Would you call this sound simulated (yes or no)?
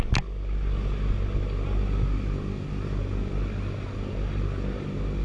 no